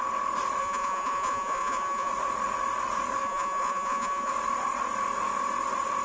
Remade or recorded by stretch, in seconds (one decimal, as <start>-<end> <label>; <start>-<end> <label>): 0.0-0.6 recorded; 0.6-2.1 remade; 2.1-3.2 recorded; 3.2-4.3 remade; 4.3-6.0 recorded